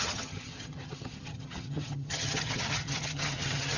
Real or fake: fake